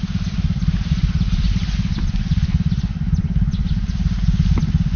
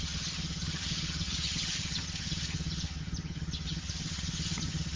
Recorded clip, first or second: first